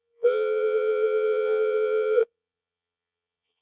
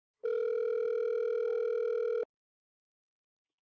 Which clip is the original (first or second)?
second